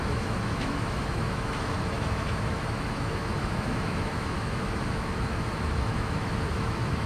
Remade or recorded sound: remade